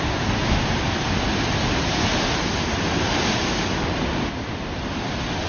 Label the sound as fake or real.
real